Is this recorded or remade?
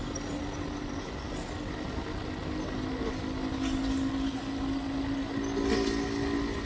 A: recorded